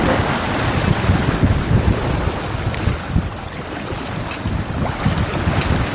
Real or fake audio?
real